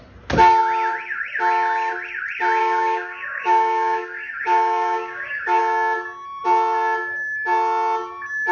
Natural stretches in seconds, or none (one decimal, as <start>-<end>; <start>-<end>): 0.0-2.6; 5.6-8.5